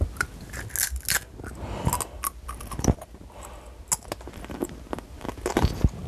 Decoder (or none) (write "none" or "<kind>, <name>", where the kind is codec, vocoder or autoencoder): none